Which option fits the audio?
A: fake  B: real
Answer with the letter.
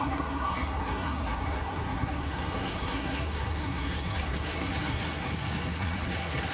A